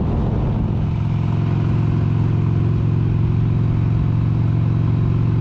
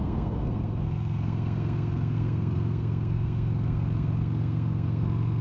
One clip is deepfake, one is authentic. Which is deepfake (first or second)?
second